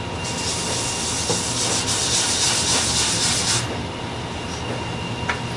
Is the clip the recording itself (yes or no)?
yes